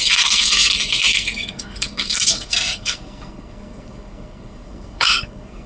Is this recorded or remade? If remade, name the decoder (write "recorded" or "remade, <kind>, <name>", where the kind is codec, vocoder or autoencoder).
remade, codec, SNAC